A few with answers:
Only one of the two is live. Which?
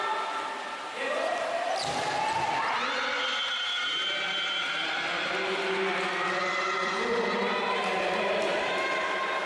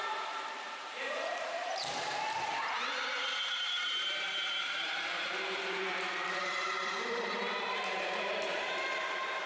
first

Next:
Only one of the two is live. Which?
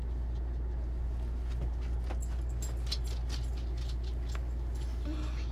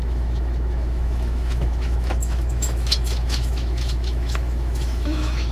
first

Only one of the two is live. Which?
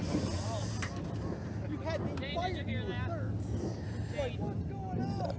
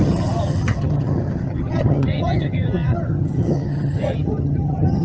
first